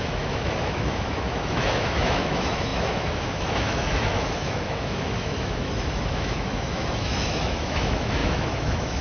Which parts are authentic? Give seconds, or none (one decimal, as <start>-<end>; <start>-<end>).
none